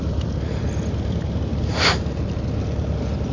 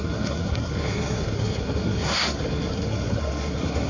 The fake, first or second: second